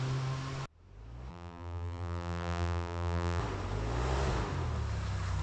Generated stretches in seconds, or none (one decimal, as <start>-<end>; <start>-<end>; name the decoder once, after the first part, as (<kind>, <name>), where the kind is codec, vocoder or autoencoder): 1.3-3.4 (vocoder, BigVGAN v2)